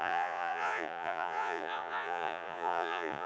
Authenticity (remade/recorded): remade